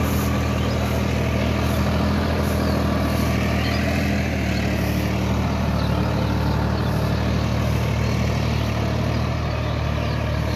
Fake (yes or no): no